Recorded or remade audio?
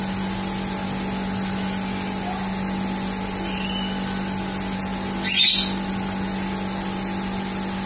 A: recorded